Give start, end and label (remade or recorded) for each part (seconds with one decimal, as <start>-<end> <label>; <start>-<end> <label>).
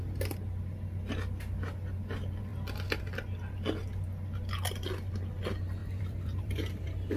0.0-5.8 recorded; 5.8-7.2 remade